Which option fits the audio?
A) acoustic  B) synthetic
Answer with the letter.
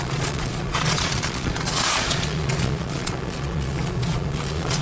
B